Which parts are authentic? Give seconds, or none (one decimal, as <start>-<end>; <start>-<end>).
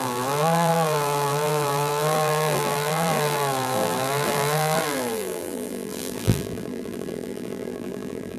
none